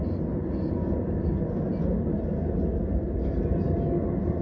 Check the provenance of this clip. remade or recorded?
recorded